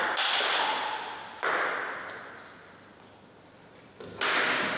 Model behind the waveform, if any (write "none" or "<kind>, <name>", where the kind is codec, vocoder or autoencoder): none